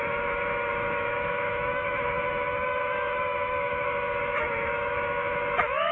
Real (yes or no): no